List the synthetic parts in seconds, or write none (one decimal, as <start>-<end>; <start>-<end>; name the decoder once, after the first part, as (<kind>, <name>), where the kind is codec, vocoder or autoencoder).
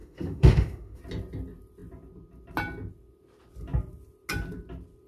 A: 0.0-1.0 (autoencoder, DAC-VAE)